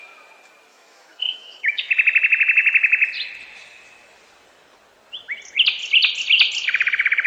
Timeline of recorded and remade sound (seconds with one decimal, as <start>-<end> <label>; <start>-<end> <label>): 0.0-0.7 recorded; 0.7-1.9 remade; 1.9-7.3 recorded